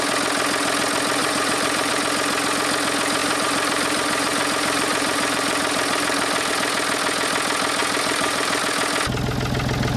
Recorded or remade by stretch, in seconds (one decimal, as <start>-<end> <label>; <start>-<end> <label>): 0.0-1.2 recorded; 1.2-1.9 remade; 1.9-3.2 recorded; 3.2-6.5 remade; 6.5-7.8 recorded; 7.8-8.6 remade; 8.6-10.0 recorded